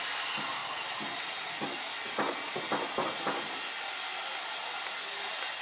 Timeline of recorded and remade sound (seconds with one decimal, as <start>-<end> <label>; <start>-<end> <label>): 0.0-5.6 recorded